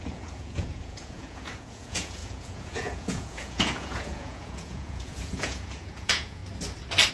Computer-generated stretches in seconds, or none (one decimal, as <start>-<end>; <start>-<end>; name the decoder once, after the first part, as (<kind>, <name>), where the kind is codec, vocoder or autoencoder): 0.0-6.4 (vocoder, Vocos)